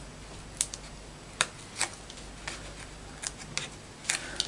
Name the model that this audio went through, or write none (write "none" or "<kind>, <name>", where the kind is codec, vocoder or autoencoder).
none